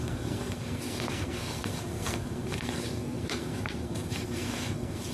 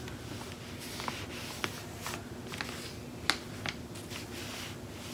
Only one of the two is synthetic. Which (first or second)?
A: first